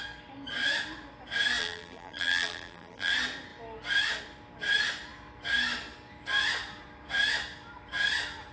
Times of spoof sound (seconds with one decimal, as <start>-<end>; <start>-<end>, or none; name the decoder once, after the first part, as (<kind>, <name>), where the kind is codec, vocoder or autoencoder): 1.6-3.1 (vocoder, BigVGAN v2)